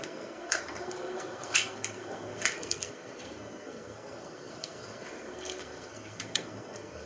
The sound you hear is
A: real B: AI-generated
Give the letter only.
B